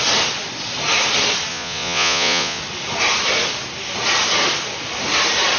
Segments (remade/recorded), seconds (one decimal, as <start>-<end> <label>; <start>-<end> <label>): 0.0-1.5 recorded; 1.5-2.6 remade; 2.6-5.6 recorded